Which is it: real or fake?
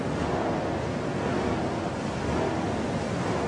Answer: real